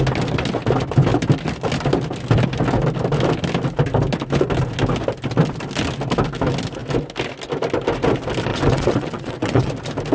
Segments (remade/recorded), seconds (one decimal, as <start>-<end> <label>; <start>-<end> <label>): 0.0-8.5 recorded; 8.5-9.7 remade; 9.7-10.1 recorded